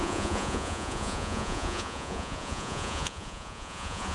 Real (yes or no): no